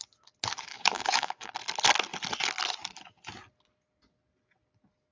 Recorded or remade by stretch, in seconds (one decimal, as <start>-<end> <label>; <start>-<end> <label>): 0.0-0.7 recorded; 0.7-1.5 remade; 1.5-5.1 recorded

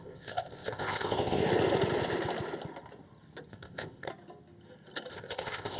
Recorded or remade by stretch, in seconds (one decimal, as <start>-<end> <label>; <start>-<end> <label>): 0.0-1.4 remade; 1.4-3.5 recorded; 3.5-4.1 remade; 4.1-5.1 recorded; 5.1-5.8 remade

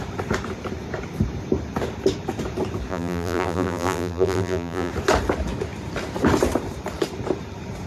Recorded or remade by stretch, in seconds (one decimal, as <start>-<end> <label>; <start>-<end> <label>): 0.0-2.9 recorded; 2.9-4.9 remade; 4.9-7.9 recorded

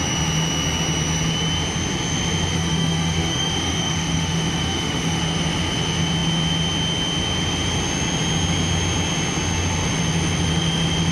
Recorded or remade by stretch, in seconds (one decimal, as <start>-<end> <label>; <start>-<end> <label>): 0.0-2.5 recorded; 2.5-5.2 remade; 5.2-11.1 recorded

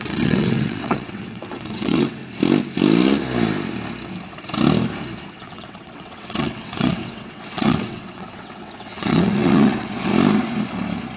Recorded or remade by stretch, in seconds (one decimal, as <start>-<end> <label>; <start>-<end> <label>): 0.0-2.2 remade; 2.2-5.3 recorded; 5.3-10.1 remade; 10.1-11.2 recorded

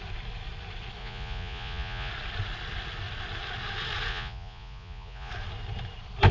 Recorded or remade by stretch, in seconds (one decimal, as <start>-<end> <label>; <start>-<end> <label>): 0.0-1.0 recorded; 1.0-2.1 remade; 2.1-4.1 recorded; 4.1-5.3 remade; 5.3-6.3 recorded

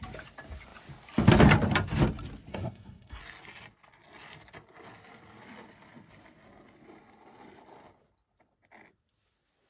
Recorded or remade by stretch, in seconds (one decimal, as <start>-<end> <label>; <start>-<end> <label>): 0.0-2.5 recorded; 2.5-3.2 remade; 3.2-9.7 recorded